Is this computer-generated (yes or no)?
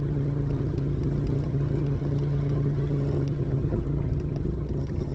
yes